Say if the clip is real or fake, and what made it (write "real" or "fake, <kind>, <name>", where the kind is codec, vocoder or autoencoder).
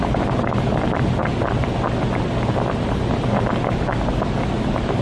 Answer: real